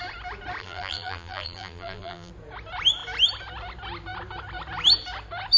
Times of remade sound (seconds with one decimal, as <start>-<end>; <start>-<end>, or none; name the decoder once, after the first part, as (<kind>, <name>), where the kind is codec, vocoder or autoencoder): 0.6-2.3 (vocoder, BigVGAN v2)